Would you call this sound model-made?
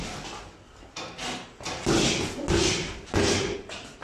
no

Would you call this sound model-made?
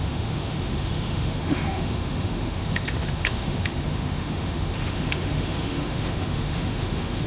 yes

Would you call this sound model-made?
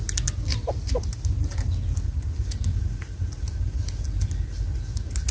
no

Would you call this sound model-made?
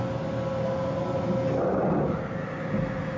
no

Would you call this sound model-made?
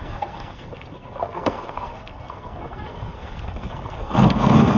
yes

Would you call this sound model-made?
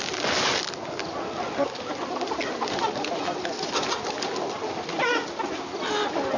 no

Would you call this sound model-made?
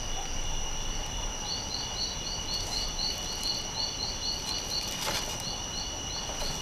no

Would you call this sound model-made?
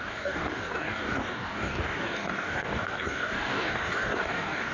yes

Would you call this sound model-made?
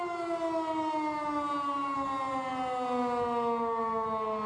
no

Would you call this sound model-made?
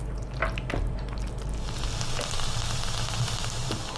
no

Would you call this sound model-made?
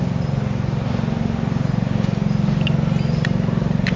no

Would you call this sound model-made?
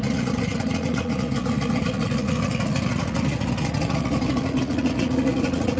yes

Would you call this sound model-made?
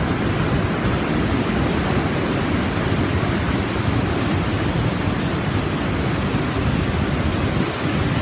no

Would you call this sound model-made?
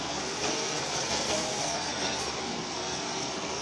yes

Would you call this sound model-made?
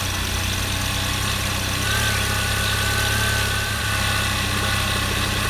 no